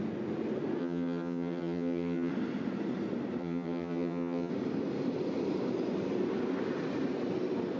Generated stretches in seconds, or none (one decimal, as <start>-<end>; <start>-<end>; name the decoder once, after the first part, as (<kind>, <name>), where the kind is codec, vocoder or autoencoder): 0.8-2.3 (vocoder, HiFi-GAN); 3.4-4.5